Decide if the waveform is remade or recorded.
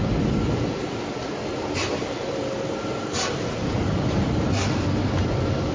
recorded